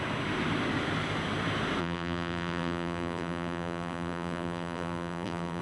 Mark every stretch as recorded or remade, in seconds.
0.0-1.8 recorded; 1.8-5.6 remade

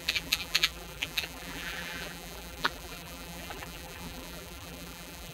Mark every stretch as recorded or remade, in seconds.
0.0-5.3 remade

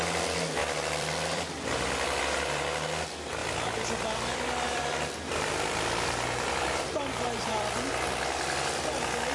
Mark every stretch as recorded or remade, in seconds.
0.0-0.6 recorded; 0.6-2.2 remade; 2.2-3.4 recorded; 3.4-7.9 remade; 7.9-9.3 recorded

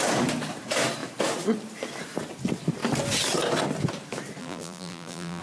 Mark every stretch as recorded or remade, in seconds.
0.0-4.4 recorded; 4.4-5.4 remade